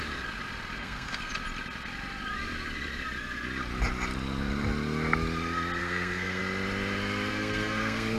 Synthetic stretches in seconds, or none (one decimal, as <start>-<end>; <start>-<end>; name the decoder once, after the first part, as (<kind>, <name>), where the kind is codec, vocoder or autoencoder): 0.8-1.3 (codec, SNAC); 5.8-6.4; 7.3-8.2